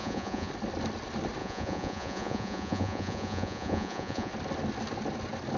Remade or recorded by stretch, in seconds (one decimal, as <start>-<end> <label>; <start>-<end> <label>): 0.0-0.5 remade; 0.5-1.4 recorded; 1.4-4.3 remade; 4.3-5.6 recorded